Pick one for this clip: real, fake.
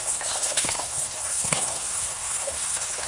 fake